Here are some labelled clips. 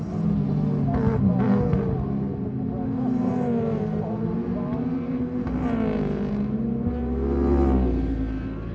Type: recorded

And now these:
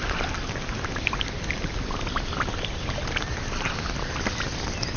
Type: recorded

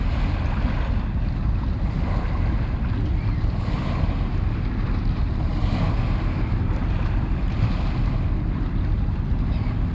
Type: recorded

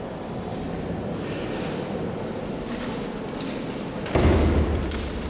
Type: recorded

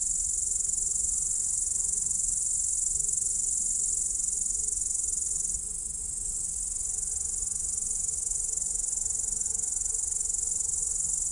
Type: recorded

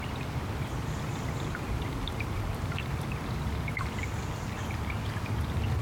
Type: recorded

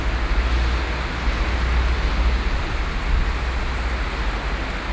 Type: recorded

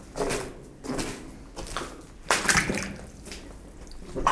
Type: recorded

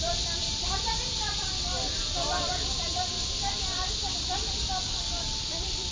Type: remade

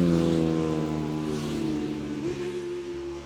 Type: recorded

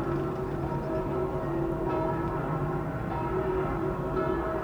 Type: remade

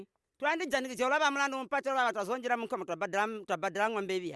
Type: recorded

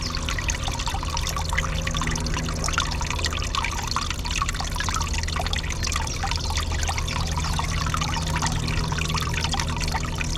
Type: recorded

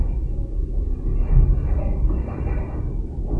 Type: recorded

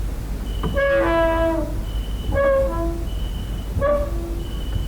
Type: recorded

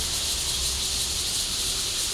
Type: recorded